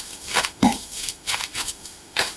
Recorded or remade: remade